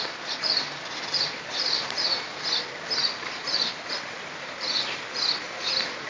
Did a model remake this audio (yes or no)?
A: no